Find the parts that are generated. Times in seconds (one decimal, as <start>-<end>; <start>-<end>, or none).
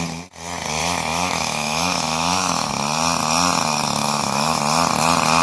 0.8-2.7; 4.0-4.6